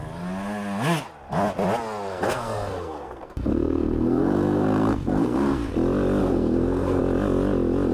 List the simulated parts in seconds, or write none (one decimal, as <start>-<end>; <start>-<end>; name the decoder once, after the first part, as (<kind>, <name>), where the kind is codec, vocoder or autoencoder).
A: 2.1-5.7 (codec, SNAC); 6.2-7.0